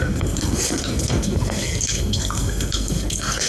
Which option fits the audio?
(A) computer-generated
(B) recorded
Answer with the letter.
A